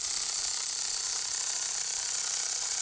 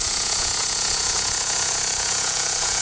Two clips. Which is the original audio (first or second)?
first